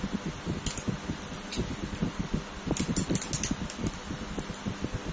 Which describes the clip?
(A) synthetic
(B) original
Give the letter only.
B